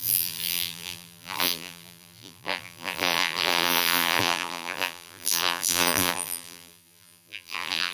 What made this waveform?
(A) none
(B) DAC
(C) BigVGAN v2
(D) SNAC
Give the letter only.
C